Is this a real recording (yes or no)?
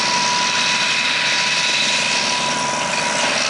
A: yes